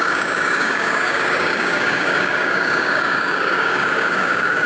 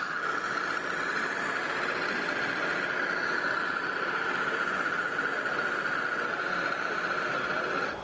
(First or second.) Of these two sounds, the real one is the second